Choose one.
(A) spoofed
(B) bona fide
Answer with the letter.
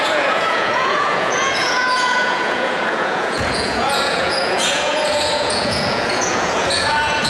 A